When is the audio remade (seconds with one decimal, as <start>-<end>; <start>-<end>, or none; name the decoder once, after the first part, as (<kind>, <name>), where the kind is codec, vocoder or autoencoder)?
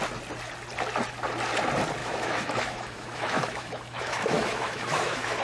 2.0-5.4 (autoencoder, DAC-VAE)